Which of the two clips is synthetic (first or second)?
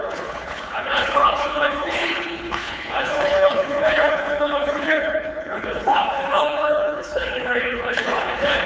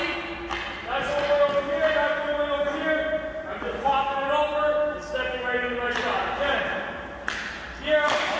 first